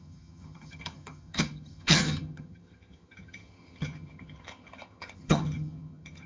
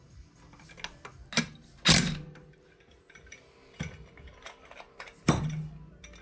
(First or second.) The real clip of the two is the second